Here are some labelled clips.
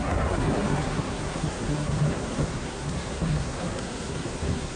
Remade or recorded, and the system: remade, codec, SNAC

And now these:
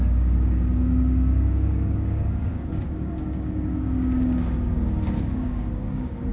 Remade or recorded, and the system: remade, codec, DAC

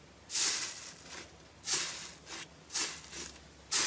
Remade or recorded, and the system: recorded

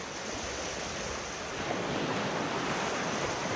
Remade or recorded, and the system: recorded